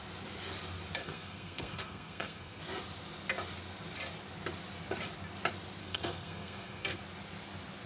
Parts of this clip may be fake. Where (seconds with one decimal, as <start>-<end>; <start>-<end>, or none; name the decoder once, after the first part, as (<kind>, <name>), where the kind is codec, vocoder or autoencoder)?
1.0-2.6 (codec, SNAC); 5.8-7.0